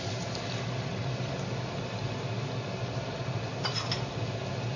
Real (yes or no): yes